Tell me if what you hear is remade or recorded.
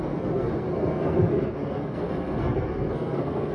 remade